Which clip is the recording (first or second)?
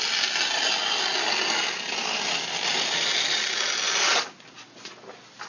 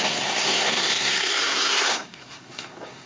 first